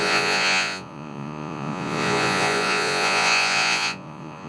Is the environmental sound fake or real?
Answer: fake